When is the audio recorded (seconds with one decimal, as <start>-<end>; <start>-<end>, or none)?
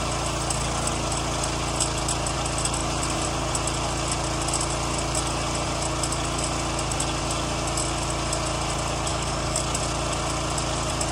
0.0-9.1; 9.6-11.1